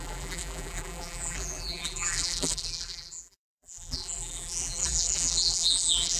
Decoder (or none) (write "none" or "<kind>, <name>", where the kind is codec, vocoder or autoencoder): vocoder, BigVGAN v2